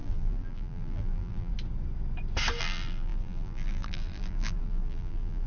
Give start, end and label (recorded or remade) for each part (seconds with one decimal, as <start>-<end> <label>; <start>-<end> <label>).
0.0-1.5 remade; 1.5-2.6 recorded; 2.6-5.5 remade